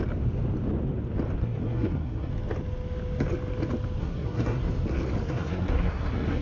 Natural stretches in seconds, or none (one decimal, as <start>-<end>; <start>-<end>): 0.0-1.4; 2.3-4.0; 4.7-5.2